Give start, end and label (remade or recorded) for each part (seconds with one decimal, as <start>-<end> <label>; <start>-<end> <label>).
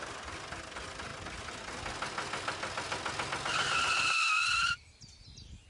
0.0-5.7 recorded